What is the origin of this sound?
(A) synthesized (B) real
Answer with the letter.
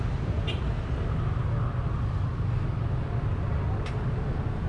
B